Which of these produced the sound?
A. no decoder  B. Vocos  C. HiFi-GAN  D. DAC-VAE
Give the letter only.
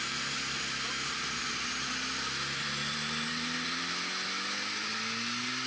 A